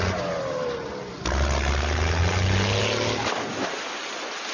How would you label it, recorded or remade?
recorded